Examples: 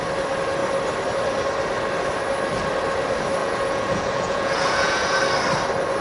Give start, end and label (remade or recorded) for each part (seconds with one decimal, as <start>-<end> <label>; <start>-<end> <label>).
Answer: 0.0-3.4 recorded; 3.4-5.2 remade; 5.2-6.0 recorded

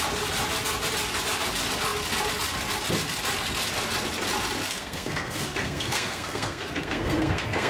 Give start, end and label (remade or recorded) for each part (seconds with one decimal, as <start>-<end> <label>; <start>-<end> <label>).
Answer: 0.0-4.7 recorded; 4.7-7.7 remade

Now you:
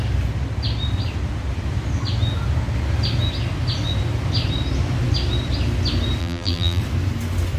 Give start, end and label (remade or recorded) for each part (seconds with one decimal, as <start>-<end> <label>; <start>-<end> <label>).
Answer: 0.0-6.2 recorded; 6.2-6.8 remade; 6.8-7.6 recorded

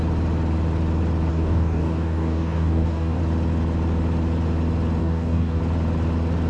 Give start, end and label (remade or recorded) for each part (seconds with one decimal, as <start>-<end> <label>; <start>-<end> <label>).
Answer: 0.0-1.3 recorded; 1.3-3.2 remade; 3.2-5.0 recorded; 5.0-5.6 remade; 5.6-6.5 recorded

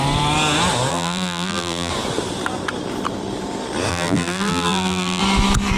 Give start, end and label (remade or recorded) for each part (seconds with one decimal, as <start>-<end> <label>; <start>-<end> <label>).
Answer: 0.0-0.9 recorded; 0.9-1.9 remade; 1.9-3.9 recorded; 3.9-5.2 remade; 5.2-5.8 recorded

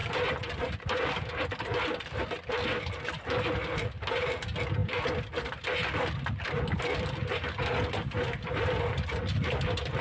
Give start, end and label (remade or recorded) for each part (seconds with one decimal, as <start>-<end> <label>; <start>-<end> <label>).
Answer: 0.0-10.0 recorded

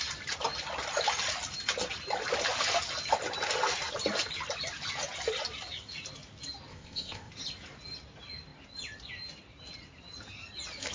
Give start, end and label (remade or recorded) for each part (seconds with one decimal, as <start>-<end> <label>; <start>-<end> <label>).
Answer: 0.0-6.7 recorded; 6.7-7.3 remade; 7.3-10.9 recorded

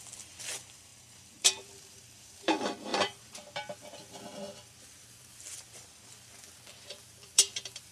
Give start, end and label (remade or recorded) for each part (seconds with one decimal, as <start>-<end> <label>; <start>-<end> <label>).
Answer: 0.0-7.9 remade